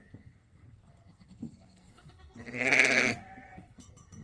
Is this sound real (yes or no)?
no